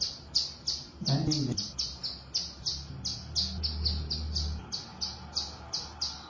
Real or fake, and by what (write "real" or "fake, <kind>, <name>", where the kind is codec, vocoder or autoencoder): real